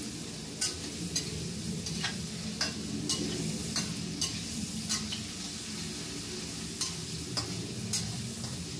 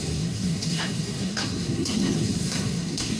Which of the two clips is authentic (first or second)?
first